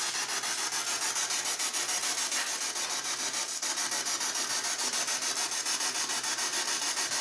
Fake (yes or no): no